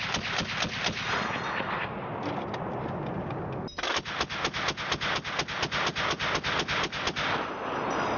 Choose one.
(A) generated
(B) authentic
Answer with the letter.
B